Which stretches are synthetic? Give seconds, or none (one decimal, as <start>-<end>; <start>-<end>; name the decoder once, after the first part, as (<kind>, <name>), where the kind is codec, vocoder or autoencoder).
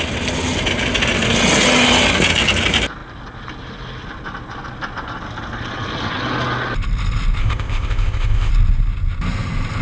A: 7.4-8.5 (codec, ZipCodec)